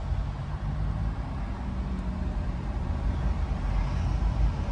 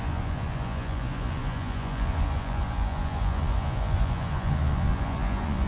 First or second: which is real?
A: first